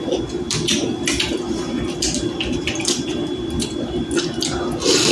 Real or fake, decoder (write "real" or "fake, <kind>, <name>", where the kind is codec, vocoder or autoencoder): real